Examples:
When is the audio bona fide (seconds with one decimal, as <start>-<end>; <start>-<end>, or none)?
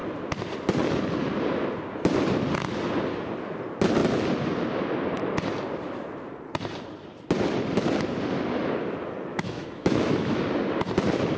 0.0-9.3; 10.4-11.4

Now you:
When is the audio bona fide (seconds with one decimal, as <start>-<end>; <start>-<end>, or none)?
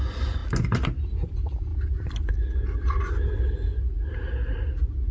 0.0-5.1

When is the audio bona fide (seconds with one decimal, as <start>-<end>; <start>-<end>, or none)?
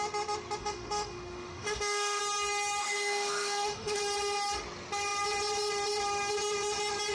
0.0-0.6; 2.2-2.8; 4.0-7.1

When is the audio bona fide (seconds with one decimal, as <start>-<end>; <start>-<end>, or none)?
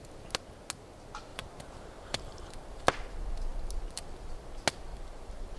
0.0-1.3; 2.8-4.9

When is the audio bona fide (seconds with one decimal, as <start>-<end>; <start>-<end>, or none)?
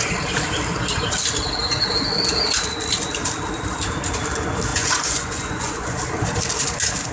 0.0-4.7; 6.0-7.1